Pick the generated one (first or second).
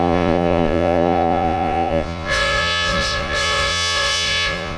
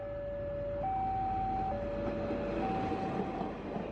first